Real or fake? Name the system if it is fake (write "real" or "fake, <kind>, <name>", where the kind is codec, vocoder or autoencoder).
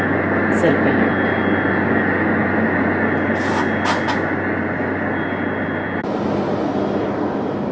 real